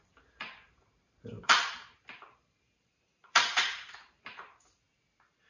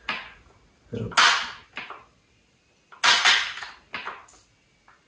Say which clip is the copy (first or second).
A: first